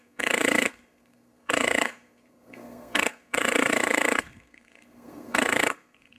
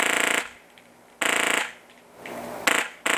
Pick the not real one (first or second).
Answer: first